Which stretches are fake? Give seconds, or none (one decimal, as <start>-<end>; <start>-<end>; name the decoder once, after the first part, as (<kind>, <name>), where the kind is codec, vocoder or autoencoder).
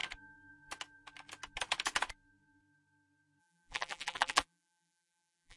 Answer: 3.4-5.6 (vocoder, BigVGAN v2)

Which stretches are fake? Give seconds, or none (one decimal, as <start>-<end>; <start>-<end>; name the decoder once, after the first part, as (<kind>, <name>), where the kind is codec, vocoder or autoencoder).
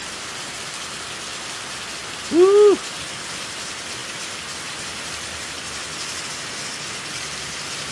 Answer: none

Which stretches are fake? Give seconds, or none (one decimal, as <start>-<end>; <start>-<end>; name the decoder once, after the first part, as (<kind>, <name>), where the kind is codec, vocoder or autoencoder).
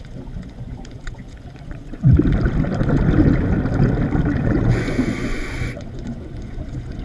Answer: 0.0-2.0 (vocoder, Vocos); 4.4-7.0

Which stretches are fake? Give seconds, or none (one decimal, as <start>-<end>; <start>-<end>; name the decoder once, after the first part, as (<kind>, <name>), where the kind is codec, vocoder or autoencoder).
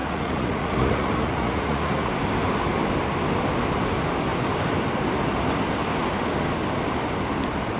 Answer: 0.0-2.1 (vocoder, Vocos)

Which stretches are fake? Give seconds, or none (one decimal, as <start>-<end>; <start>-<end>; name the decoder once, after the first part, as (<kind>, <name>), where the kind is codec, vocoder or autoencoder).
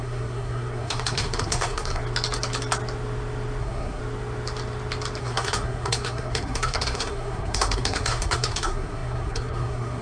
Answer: 0.0-2.0 (codec, SNAC); 3.6-4.0; 5.2-10.0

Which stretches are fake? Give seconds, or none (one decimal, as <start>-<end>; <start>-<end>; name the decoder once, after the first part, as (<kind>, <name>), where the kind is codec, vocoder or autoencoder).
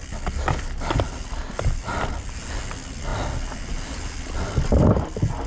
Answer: none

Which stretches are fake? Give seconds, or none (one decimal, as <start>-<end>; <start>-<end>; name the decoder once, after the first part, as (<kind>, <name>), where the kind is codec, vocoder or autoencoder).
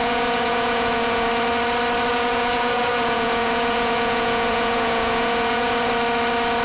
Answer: 0.0-1.3 (vocoder, Vocos); 2.1-5.9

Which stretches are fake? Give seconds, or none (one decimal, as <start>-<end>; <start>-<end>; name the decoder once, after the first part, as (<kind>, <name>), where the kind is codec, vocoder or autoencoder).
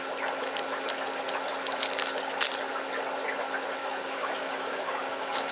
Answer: 3.8-5.5 (codec, DAC)